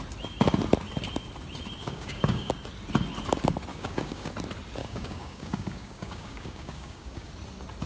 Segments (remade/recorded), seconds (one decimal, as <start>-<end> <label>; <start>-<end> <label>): 0.0-1.8 recorded; 1.8-2.5 remade; 2.5-3.7 recorded; 3.7-4.3 remade; 4.3-4.8 recorded; 4.8-7.3 remade; 7.3-7.9 recorded